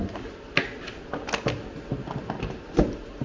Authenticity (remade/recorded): recorded